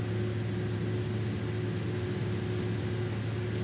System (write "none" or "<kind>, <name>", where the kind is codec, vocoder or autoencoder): none